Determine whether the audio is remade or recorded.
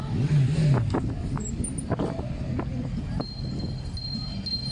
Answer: recorded